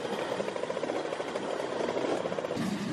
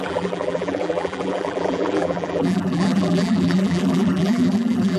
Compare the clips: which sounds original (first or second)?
first